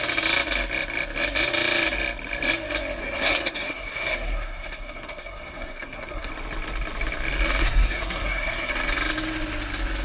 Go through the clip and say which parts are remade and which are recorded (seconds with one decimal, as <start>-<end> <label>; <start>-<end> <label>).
0.0-3.0 recorded; 3.0-6.3 remade; 6.3-7.6 recorded; 7.6-8.7 remade; 8.7-10.0 recorded